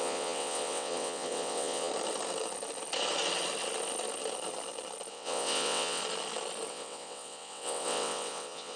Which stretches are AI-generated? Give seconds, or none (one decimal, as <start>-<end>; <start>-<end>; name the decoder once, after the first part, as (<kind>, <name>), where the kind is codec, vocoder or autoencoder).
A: 0.0-1.9 (vocoder, WaveNeXt); 5.1-6.0; 6.7-8.8